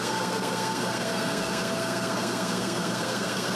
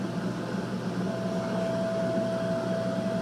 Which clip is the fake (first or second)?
first